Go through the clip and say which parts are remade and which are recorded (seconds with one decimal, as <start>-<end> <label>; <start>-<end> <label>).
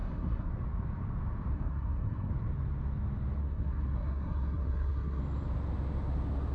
0.0-0.5 remade; 0.5-1.5 recorded; 1.5-2.3 remade; 2.3-3.4 recorded; 3.4-5.2 remade; 5.2-6.5 recorded